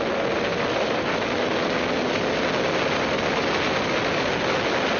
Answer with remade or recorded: recorded